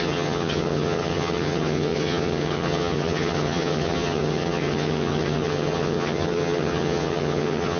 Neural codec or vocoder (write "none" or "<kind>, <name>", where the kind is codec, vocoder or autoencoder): vocoder, HiFi-GAN